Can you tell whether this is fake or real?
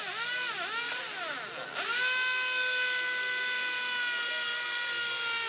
real